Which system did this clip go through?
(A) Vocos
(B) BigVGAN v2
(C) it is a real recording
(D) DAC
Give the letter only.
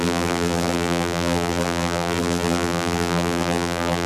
B